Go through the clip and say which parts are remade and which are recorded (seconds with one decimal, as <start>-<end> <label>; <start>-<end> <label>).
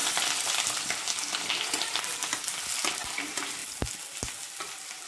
0.0-5.1 recorded